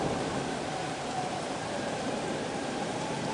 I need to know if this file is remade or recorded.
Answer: remade